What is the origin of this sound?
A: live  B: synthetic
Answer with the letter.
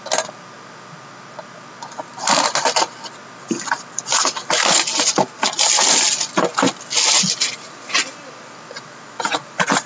A